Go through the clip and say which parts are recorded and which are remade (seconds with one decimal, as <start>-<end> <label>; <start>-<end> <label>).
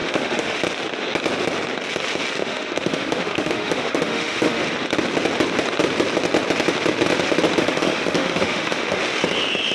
0.0-0.6 remade; 0.6-2.4 recorded; 2.4-4.6 remade; 4.6-7.6 recorded; 7.6-9.0 remade; 9.0-9.7 recorded